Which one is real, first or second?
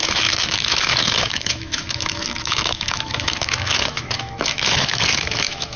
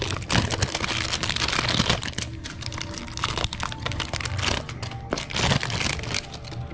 second